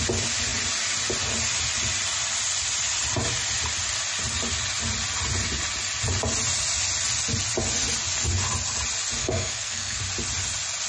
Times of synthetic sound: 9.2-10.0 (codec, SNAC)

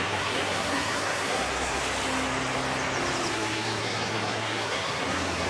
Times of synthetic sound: 0.0-1.8 (codec, SNAC); 3.3-5.5

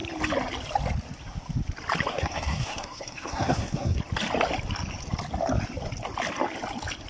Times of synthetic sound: 2.1-4.0 (codec, SNAC)